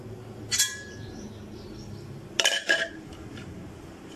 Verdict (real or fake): fake